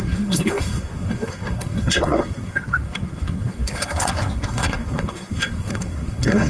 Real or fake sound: fake